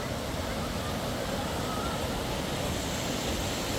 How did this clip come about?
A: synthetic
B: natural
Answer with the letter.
B